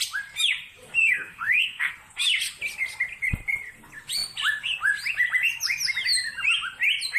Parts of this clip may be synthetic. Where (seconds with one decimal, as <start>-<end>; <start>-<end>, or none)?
1.0-1.9